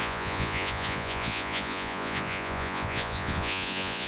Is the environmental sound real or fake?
fake